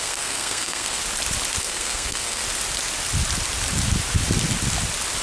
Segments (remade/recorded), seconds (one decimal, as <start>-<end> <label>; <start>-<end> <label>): 0.0-1.0 remade; 1.0-1.6 recorded; 1.6-2.4 remade; 2.4-5.2 recorded